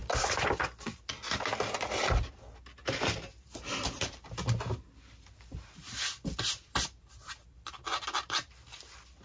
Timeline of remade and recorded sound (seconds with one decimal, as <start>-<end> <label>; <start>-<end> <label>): 0.0-9.2 recorded